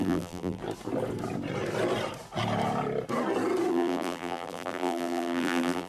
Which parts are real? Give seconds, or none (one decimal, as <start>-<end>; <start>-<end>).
0.6-3.7